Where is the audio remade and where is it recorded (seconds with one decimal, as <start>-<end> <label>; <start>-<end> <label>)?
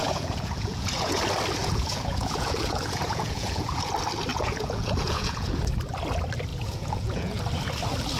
0.0-1.2 remade; 1.2-1.6 recorded; 1.6-3.9 remade; 3.9-4.3 recorded; 4.3-5.6 remade; 5.6-6.5 recorded; 6.5-7.4 remade; 7.4-8.2 recorded